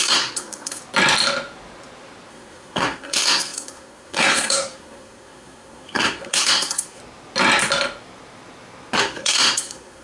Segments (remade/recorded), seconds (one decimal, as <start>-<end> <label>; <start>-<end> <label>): 0.0-0.8 remade; 0.8-2.3 recorded; 2.3-7.0 remade; 7.0-9.0 recorded; 9.0-10.0 remade